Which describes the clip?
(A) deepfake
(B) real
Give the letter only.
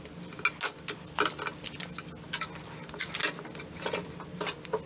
B